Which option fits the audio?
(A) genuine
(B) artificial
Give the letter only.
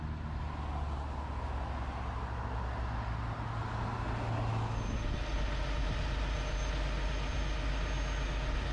A